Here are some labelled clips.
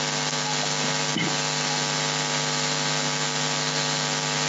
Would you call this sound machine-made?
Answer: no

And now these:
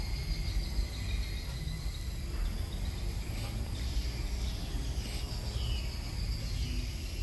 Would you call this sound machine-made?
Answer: no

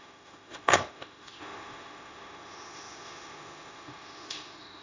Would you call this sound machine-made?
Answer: yes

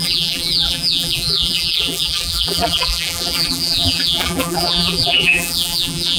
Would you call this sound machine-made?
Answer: yes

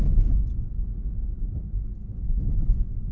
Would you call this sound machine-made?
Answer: no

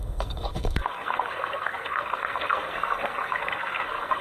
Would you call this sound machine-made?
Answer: yes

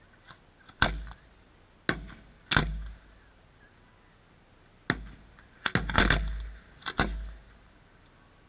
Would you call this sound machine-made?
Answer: no